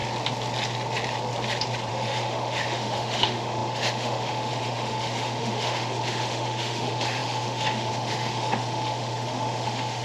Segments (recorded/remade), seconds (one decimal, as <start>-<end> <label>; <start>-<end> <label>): 0.0-1.9 recorded; 1.9-10.0 remade